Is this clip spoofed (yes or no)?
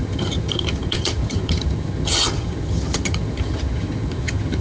yes